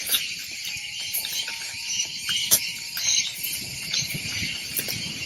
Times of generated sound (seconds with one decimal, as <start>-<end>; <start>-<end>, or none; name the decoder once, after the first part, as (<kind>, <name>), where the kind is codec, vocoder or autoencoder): 0.0-4.7 (vocoder, BigVGAN v2)